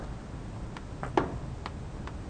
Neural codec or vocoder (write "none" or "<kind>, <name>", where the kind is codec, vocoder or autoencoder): none